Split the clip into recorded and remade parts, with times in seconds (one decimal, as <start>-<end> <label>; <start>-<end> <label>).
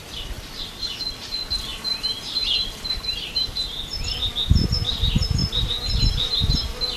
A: 0.0-1.7 remade; 1.7-2.6 recorded; 2.6-7.0 remade